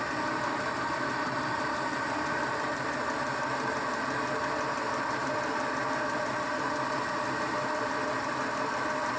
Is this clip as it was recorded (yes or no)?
yes